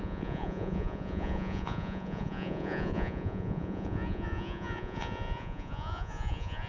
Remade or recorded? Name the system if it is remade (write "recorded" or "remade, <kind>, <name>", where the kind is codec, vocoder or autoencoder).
remade, vocoder, Vocos